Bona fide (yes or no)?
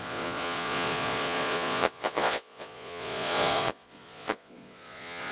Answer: no